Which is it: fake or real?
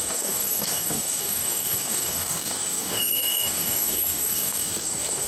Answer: fake